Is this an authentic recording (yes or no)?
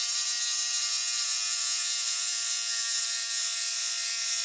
yes